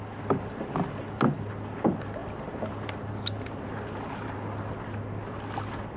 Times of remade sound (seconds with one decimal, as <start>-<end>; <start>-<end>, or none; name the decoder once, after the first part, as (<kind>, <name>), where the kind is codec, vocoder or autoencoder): none